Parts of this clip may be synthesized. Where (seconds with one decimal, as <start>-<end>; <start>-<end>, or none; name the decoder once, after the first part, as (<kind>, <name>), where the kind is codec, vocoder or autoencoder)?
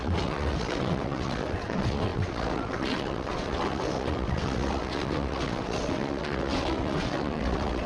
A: 0.0-7.9 (vocoder, WaveNeXt)